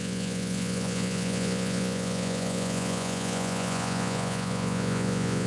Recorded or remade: remade